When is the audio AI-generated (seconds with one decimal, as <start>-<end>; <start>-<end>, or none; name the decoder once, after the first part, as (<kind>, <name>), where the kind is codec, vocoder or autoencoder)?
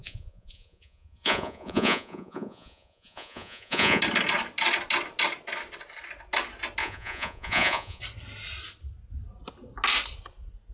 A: 0.0-4.0 (vocoder, Vocos); 6.8-8.0